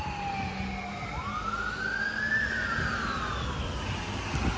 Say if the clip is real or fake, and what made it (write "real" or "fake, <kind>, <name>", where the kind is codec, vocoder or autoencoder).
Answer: real